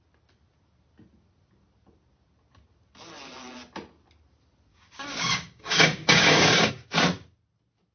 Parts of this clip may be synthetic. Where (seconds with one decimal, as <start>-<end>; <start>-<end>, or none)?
4.7-6.7